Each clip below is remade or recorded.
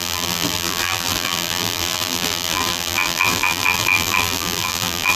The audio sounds remade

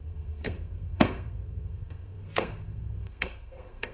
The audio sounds remade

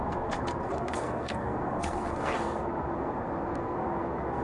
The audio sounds remade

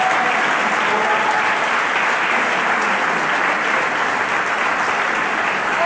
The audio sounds recorded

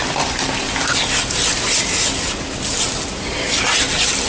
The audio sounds recorded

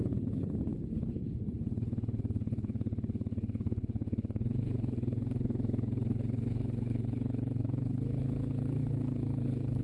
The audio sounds remade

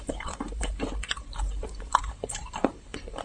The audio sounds remade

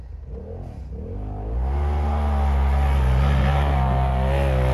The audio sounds recorded